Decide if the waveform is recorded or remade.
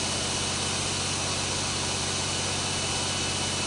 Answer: recorded